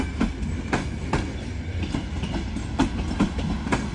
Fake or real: real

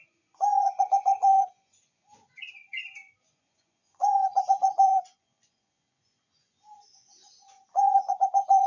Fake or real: fake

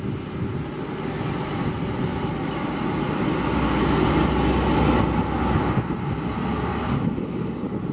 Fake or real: real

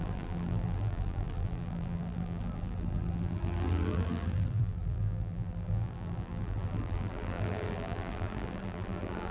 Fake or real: fake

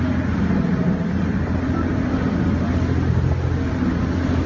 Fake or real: real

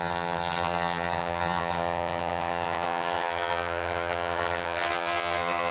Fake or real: fake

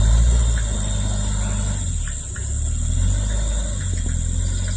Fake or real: real